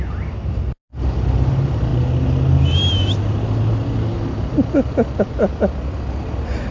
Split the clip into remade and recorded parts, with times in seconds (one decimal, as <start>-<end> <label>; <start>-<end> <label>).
0.0-6.7 recorded